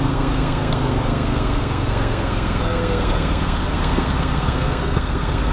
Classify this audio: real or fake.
fake